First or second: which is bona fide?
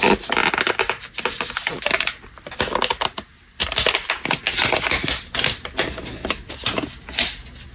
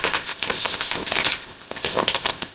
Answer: first